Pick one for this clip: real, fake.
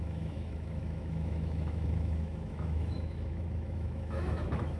fake